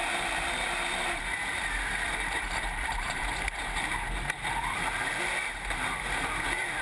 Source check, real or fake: fake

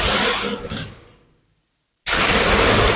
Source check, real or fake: real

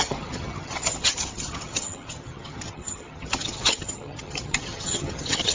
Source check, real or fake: fake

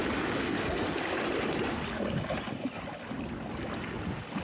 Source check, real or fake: real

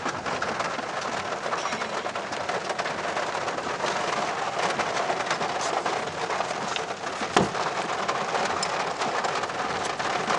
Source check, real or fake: real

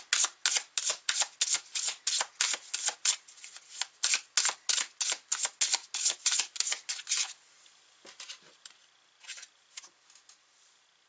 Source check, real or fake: real